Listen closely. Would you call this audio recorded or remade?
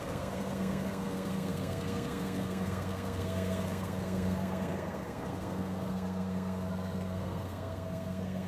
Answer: remade